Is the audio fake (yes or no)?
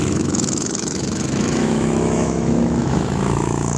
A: yes